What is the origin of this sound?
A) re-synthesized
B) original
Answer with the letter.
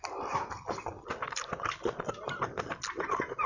B